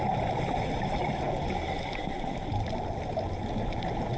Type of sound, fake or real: real